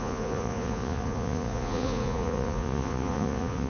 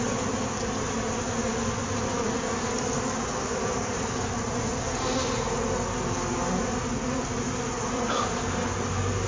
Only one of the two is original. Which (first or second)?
second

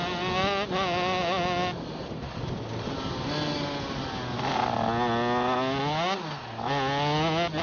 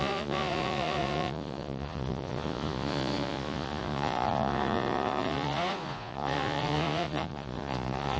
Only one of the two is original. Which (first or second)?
first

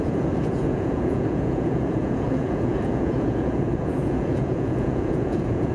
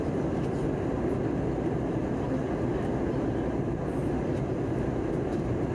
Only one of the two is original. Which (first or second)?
second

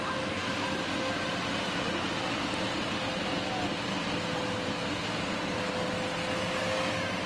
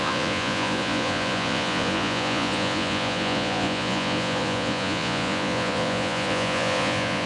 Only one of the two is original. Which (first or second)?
first